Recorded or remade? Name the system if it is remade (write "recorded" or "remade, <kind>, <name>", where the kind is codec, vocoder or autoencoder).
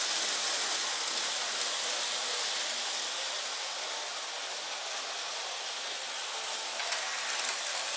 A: recorded